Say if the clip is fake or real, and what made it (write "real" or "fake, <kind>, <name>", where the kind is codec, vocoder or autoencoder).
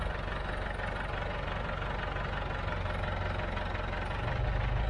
real